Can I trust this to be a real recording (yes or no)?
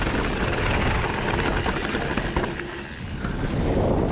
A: yes